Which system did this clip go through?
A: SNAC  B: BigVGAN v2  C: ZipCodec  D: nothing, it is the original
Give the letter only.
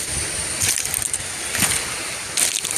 B